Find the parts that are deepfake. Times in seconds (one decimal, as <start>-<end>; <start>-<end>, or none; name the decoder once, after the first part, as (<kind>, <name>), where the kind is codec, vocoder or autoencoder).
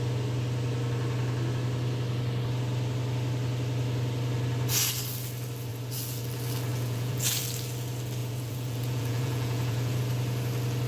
5.7-6.2 (vocoder, Vocos); 6.7-7.4; 8.2-10.0